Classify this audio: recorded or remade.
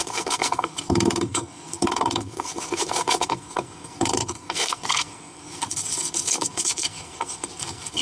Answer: remade